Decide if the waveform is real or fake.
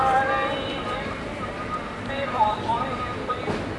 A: fake